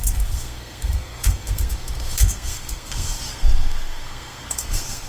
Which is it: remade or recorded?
remade